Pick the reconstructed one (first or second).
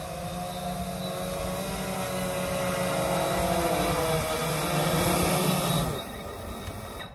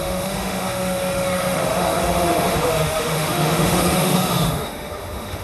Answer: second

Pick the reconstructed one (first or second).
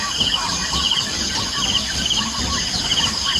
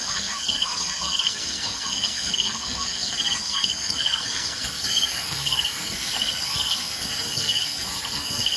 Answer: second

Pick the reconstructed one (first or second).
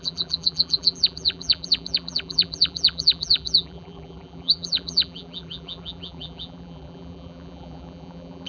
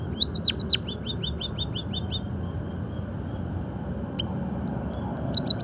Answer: first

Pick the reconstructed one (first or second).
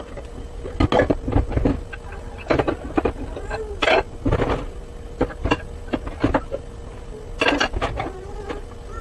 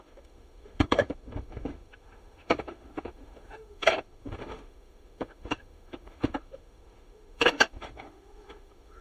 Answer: second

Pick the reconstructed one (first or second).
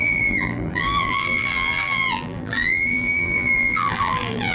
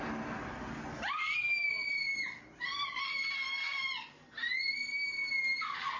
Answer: first